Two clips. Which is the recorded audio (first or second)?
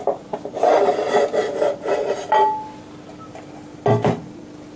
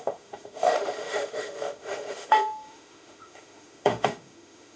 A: first